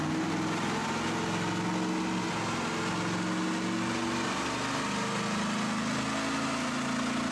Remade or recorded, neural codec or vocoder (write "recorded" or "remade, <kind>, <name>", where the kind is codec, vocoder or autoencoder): recorded